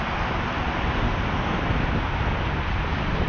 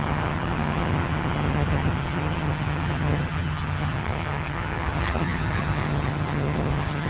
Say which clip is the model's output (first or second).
second